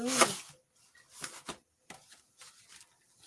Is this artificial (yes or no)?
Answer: no